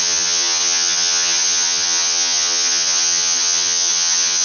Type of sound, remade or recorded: remade